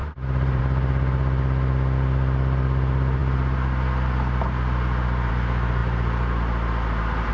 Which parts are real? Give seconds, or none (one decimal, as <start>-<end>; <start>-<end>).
0.6-7.3